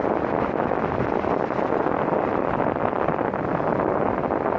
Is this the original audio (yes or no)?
yes